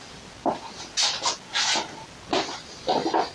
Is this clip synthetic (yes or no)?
no